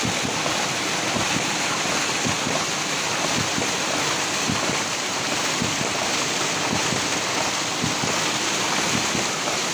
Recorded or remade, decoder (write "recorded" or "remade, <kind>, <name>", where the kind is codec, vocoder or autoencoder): recorded